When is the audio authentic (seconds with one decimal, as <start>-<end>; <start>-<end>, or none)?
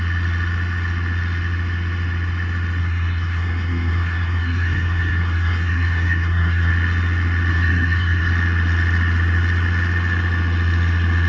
0.0-2.8; 6.7-7.5; 8.3-11.3